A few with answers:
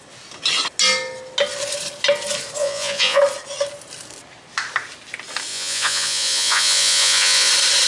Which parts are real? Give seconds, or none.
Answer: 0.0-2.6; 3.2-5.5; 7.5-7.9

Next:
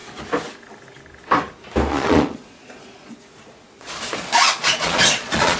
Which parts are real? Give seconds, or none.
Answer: 0.0-1.9

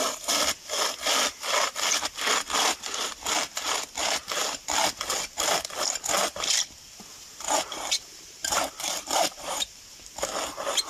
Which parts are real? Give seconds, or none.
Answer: 0.0-7.1; 9.8-10.9

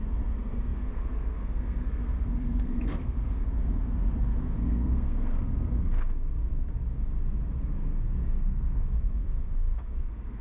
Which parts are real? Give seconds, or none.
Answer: 6.5-7.7

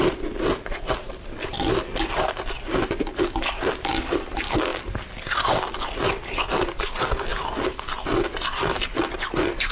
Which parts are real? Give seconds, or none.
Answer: 0.0-9.7